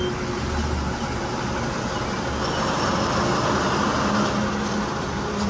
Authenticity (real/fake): real